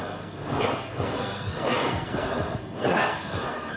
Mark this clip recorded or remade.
remade